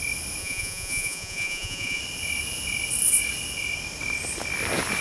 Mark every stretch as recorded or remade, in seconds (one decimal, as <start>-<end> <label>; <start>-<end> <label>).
0.0-0.4 recorded; 0.4-2.0 remade; 2.0-5.0 recorded